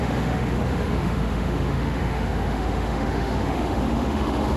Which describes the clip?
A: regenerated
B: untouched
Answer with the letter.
A